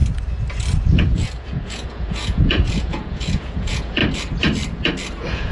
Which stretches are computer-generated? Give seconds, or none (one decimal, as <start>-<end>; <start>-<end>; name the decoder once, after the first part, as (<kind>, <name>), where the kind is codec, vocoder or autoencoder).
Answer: 0.8-4.0 (vocoder, Vocos); 5.1-5.5